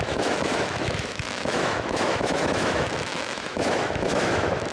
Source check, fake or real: fake